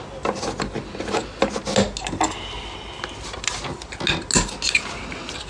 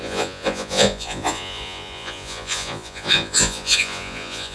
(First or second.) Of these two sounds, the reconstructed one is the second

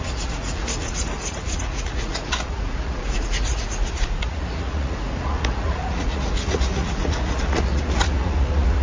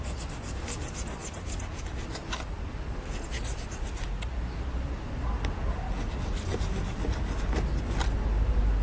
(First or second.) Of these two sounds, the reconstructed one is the first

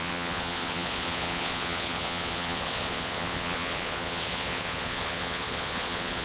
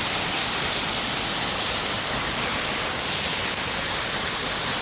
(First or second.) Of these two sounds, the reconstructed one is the first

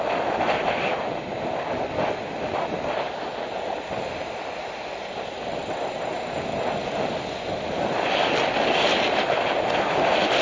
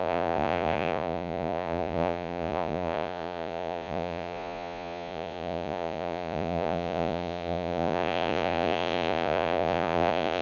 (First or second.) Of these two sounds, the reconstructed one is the second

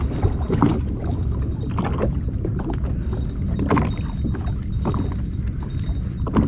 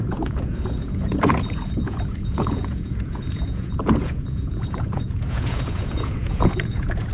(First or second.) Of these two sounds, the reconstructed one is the second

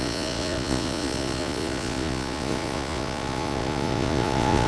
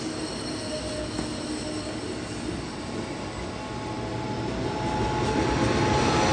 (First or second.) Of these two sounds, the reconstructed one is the first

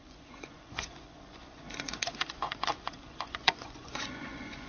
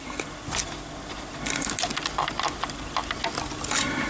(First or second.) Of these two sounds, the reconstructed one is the first